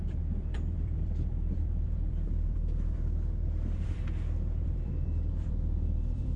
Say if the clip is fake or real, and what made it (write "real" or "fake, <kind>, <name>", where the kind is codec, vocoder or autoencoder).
fake, vocoder, BigVGAN v2